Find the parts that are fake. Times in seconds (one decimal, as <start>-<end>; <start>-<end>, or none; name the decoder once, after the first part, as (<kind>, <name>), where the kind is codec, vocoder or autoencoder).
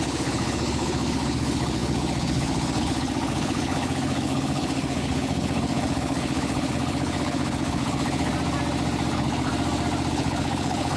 0.0-8.3 (codec, HILCodec); 9.1-9.5; 10.1-11.0